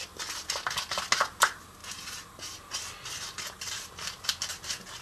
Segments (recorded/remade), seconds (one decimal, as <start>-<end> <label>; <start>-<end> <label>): 0.0-5.0 recorded